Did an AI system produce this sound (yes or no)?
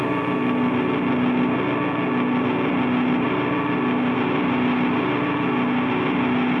no